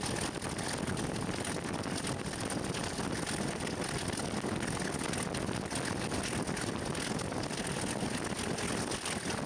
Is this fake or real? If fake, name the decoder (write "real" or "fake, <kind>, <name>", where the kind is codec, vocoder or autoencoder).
real